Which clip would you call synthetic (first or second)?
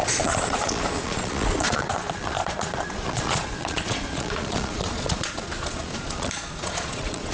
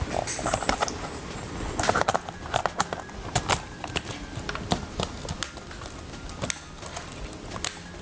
first